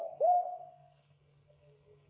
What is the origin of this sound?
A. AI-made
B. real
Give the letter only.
A